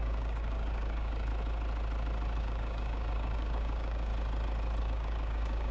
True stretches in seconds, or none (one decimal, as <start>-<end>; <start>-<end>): 1.3-2.4; 4.1-4.8